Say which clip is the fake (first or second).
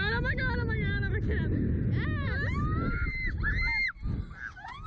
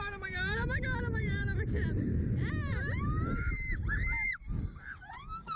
second